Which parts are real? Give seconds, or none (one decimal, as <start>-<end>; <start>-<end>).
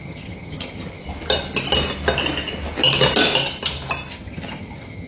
1.0-4.1